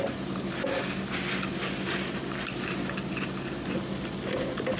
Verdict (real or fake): real